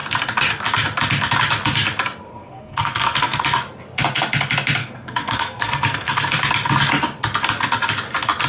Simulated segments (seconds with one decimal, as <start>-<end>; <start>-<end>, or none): 2.3-3.4; 4.8-6.2